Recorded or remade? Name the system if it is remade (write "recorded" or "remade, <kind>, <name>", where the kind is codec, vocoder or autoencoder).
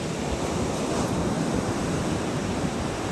recorded